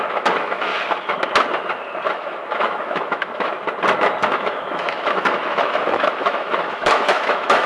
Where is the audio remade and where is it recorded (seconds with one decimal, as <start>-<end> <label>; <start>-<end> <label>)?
0.0-0.7 remade; 0.7-2.1 recorded; 2.1-3.5 remade; 3.5-4.0 recorded; 4.0-7.7 remade